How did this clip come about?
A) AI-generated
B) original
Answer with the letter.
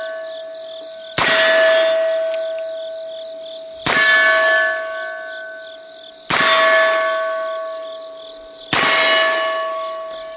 B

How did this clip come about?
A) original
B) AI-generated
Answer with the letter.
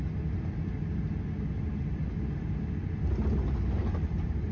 A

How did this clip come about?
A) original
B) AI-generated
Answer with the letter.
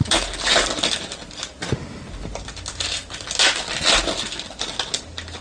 A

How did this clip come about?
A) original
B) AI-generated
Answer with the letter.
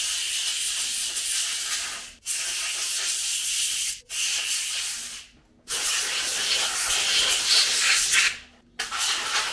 A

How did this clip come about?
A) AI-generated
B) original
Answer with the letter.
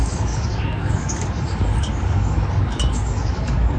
A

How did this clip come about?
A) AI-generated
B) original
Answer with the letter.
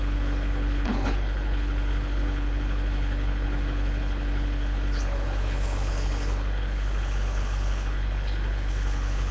A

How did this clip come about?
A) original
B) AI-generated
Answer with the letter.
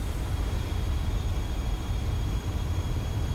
B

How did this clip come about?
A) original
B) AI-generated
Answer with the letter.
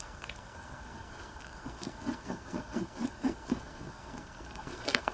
B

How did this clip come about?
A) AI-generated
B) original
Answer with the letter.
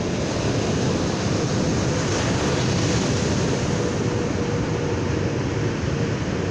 B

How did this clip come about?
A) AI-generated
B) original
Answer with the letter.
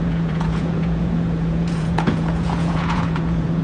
A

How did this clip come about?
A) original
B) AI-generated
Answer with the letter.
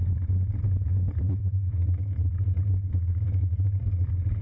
B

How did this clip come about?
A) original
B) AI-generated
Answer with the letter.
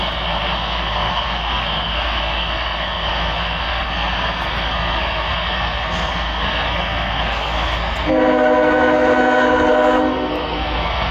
B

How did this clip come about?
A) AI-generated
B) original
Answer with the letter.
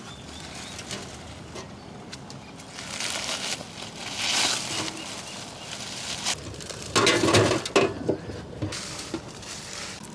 B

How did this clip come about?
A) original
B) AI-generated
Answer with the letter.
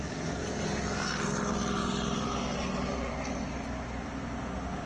A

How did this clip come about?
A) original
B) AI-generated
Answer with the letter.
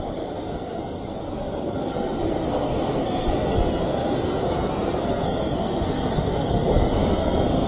B